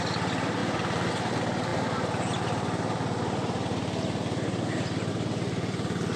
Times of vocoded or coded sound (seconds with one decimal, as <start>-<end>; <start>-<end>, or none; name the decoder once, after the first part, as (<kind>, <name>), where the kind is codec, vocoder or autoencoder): none